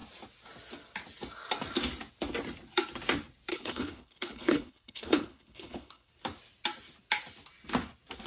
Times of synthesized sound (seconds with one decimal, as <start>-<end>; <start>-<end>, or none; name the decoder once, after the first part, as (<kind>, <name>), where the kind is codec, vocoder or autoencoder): 3.5-6.1 (codec, HILCodec)